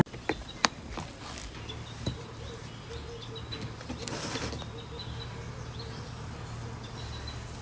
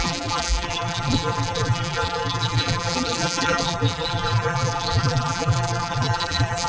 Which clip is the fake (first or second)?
second